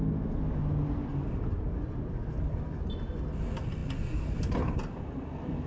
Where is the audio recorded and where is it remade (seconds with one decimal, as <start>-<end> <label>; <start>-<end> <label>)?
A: 0.0-5.7 recorded